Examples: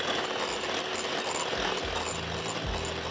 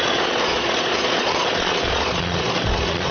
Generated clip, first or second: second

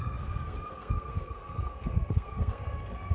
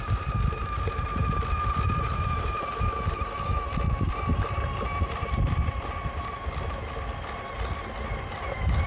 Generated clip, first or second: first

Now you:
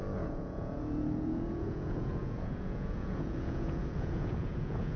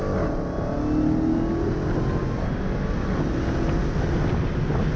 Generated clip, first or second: first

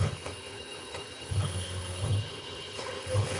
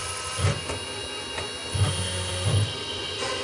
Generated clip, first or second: first